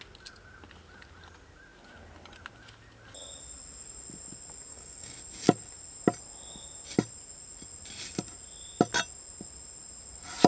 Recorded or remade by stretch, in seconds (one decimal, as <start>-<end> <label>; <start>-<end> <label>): 0.0-4.7 recorded; 4.7-5.2 remade; 5.2-10.5 recorded